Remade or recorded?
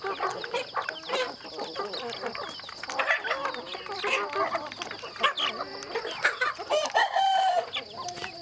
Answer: recorded